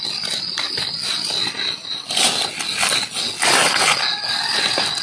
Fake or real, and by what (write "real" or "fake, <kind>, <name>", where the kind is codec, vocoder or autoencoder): real